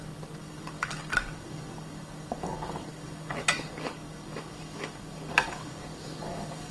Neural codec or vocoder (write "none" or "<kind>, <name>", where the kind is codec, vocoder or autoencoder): codec, DAC